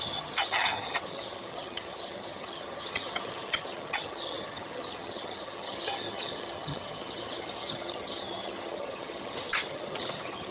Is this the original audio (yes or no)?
no